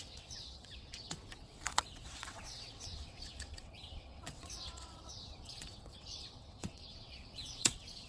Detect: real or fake fake